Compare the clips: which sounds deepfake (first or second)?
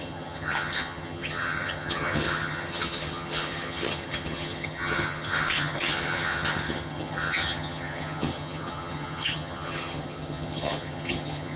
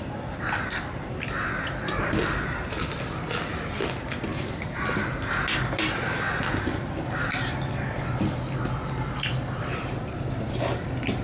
first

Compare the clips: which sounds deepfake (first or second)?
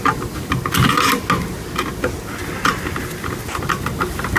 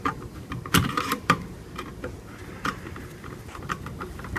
second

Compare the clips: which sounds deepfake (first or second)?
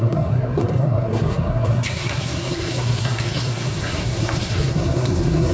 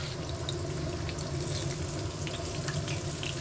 first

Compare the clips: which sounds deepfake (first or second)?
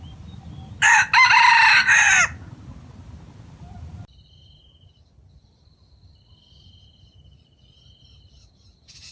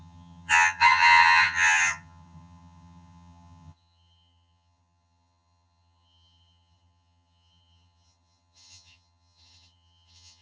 second